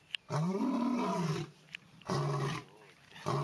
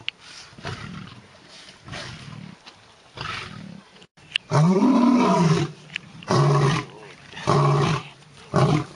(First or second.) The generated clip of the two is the second